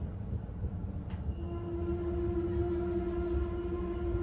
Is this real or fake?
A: real